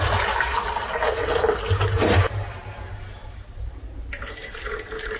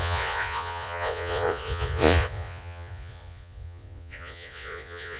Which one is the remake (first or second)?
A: second